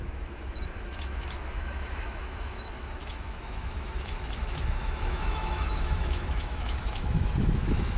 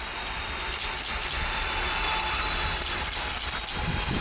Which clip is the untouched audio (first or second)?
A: second